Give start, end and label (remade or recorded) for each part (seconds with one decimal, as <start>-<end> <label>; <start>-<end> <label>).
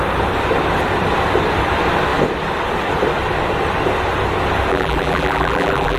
0.0-4.7 recorded; 4.7-6.0 remade